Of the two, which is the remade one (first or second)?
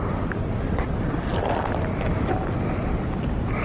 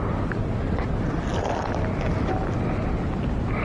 first